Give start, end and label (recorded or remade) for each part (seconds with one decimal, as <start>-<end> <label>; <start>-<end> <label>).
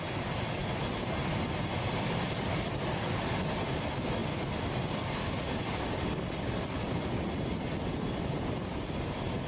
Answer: 0.0-9.5 recorded